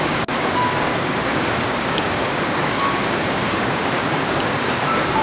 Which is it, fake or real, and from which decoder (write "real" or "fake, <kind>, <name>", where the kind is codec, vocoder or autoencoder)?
fake, codec, DAC